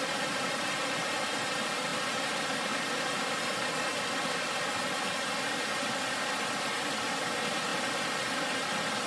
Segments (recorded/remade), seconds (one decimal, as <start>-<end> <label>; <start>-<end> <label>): 0.0-9.1 recorded